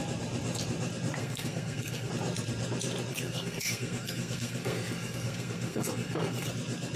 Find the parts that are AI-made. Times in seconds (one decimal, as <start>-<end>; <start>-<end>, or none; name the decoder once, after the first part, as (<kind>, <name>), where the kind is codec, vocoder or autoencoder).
1.2-2.1 (codec, SNAC); 3.1-6.5